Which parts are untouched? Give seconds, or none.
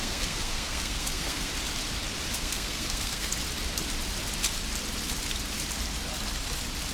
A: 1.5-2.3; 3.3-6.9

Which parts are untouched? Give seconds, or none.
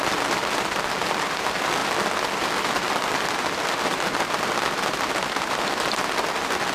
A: 0.0-6.7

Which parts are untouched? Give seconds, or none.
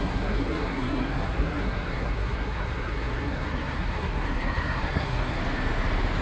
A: 5.4-6.2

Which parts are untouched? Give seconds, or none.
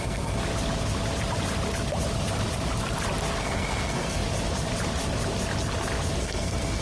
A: 0.4-3.4; 4.2-6.2